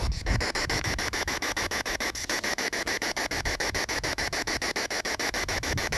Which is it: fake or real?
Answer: fake